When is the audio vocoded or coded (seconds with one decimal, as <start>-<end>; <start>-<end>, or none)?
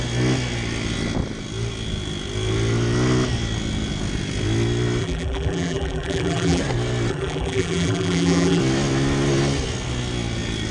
5.0-6.6; 7.1-8.6